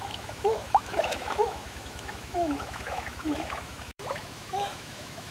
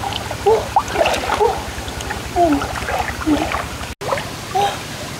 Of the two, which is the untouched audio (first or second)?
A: second